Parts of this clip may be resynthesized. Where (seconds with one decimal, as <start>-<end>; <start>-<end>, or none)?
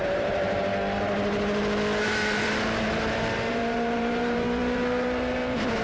0.0-0.7; 2.0-5.8